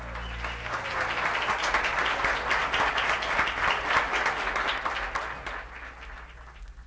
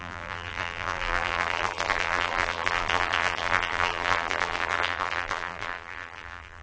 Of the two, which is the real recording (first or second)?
first